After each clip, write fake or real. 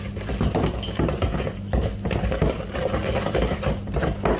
real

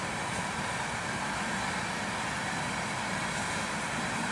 real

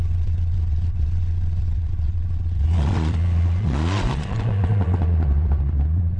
fake